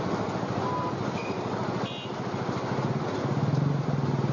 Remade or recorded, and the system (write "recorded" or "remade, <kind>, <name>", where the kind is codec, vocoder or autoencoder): recorded